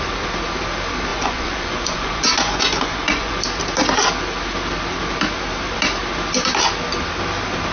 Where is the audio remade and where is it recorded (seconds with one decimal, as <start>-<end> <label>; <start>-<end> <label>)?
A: 0.0-1.1 recorded; 1.1-3.4 remade; 3.4-7.7 recorded